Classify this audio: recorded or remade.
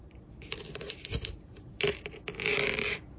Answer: recorded